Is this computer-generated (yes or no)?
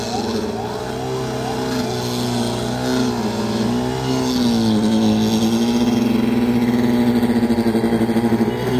no